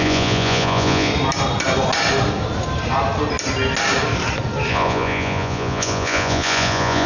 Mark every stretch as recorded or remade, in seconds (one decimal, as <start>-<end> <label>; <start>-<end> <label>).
0.0-1.1 remade; 1.1-4.7 recorded; 4.7-7.1 remade